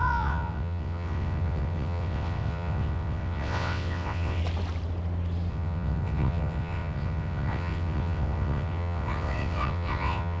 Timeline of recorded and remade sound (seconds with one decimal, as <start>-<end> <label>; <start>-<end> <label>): 0.0-4.4 remade; 4.4-5.5 recorded; 5.5-10.4 remade